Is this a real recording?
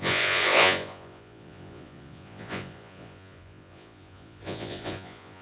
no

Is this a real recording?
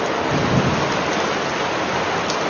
yes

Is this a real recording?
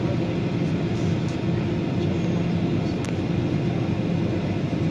yes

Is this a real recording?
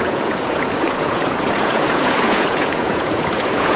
no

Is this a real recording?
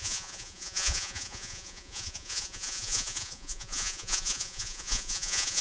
no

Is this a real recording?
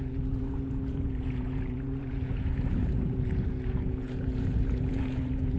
no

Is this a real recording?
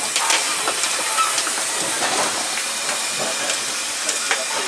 yes